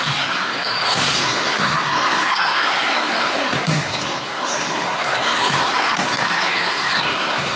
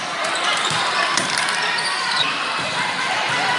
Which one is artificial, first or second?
first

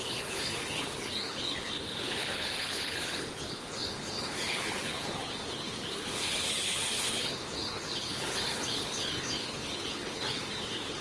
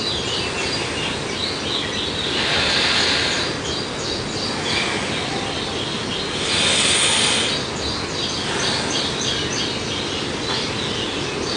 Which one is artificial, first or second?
first